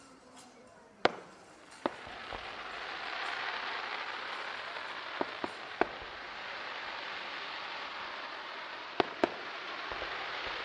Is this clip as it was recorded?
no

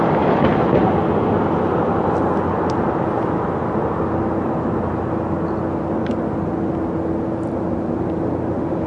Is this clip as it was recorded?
yes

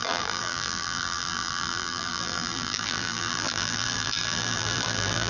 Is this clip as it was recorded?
no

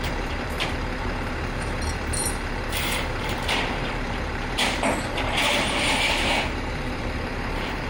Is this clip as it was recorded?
no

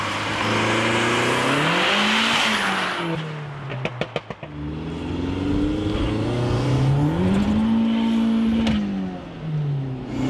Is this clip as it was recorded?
yes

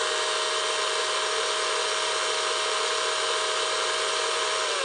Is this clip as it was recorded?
yes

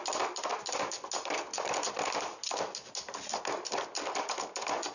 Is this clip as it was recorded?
yes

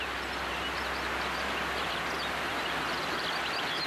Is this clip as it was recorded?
yes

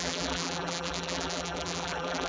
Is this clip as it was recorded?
no